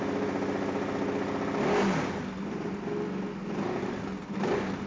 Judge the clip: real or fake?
real